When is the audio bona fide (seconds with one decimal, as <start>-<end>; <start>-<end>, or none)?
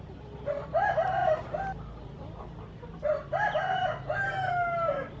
0.0-5.2